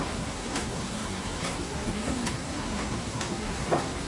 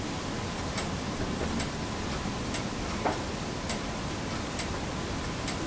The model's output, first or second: first